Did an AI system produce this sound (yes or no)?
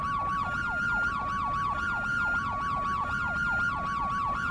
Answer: no